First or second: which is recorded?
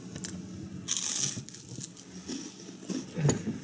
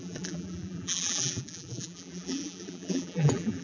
first